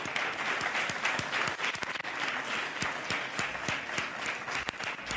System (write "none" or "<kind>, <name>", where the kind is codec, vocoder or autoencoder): none